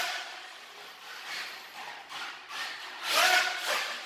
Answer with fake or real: real